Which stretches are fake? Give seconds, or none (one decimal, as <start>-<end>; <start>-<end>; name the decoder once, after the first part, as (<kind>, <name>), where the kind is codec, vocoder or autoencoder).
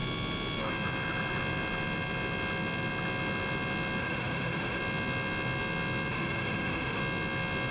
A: 4.0-4.8 (autoencoder, DAC-VAE); 6.1-7.0